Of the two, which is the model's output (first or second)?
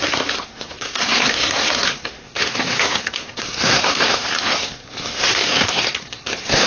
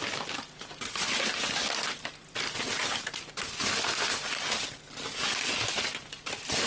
first